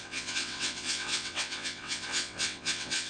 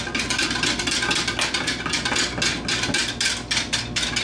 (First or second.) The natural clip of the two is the second